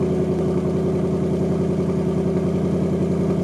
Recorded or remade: recorded